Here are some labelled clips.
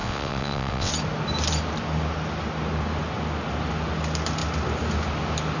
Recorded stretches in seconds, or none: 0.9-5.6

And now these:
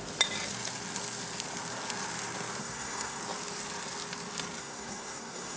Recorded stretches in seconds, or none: 0.0-2.6; 3.2-4.6

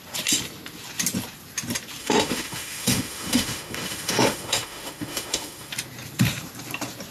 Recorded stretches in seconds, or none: 0.0-2.0; 5.7-7.1

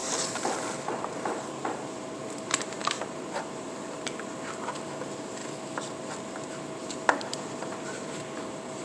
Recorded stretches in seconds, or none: 1.6-2.8; 4.7-6.8; 8.2-8.8

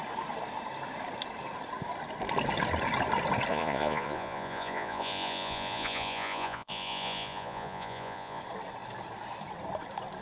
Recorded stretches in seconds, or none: 0.0-3.5; 8.4-10.2

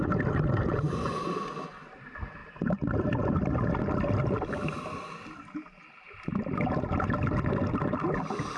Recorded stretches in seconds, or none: 0.0-8.6

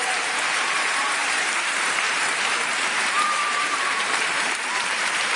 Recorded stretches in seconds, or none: none

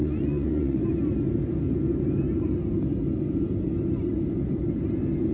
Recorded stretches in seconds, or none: 0.8-5.3